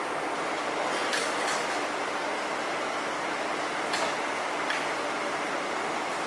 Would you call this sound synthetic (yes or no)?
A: no